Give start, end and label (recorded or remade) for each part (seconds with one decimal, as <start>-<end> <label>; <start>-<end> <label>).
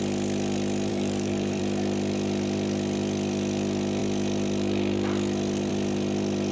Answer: 0.0-0.9 recorded; 0.9-1.6 remade; 1.6-6.5 recorded